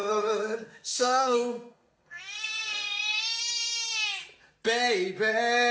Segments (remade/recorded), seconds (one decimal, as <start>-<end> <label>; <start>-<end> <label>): 0.0-3.4 remade; 3.4-5.7 recorded